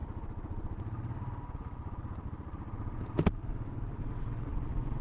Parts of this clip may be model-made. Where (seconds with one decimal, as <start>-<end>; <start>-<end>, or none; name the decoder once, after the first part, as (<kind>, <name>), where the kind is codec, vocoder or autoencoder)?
4.0-5.0 (vocoder, WaveNeXt)